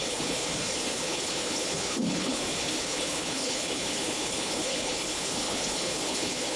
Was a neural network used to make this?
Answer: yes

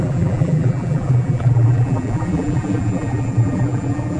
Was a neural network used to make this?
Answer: yes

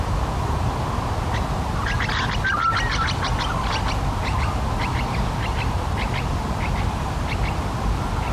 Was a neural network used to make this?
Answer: no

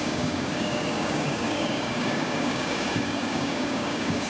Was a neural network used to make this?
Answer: yes